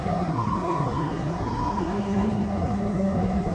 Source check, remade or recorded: remade